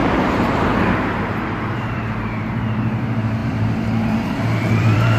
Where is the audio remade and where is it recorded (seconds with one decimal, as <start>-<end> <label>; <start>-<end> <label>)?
0.0-5.2 remade